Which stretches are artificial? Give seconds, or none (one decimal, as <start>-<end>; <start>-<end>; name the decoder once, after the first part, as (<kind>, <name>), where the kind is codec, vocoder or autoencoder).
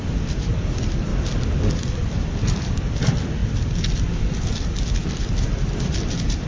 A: 0.0-3.4 (vocoder, BigVGAN v2); 4.0-6.5